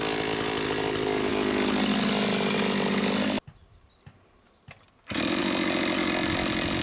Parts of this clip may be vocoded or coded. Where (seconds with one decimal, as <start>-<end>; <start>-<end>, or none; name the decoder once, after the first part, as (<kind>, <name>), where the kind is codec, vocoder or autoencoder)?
none